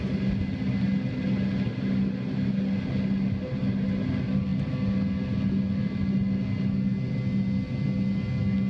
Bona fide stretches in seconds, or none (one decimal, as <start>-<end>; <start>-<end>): 0.0-8.7